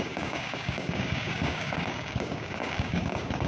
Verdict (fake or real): fake